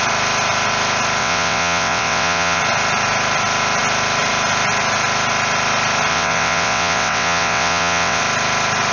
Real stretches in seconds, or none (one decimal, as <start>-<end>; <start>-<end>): 0.0-1.2; 2.6-6.1; 8.2-8.9